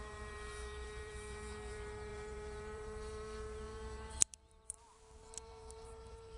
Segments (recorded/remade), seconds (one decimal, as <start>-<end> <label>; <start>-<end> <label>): 0.0-6.4 remade